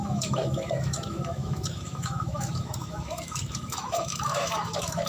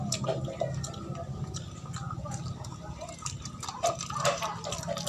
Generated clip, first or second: first